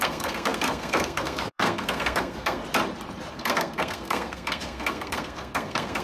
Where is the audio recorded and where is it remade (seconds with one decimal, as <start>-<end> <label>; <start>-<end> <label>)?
0.0-2.6 remade; 2.6-3.3 recorded; 3.3-6.0 remade